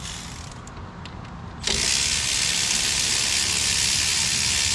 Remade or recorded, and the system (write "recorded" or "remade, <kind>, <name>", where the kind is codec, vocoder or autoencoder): recorded